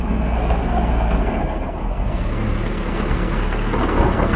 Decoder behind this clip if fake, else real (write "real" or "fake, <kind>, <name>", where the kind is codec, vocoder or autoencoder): fake, codec, SNAC